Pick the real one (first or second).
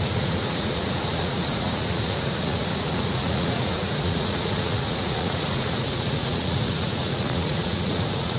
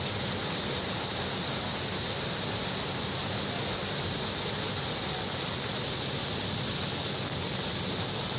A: second